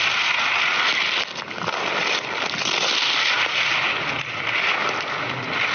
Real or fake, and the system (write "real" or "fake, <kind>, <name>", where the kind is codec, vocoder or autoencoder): real